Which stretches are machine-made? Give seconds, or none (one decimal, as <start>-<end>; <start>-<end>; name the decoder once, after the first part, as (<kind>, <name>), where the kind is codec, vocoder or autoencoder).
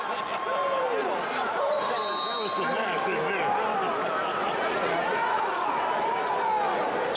1.0-1.9 (vocoder, Vocos); 4.3-5.7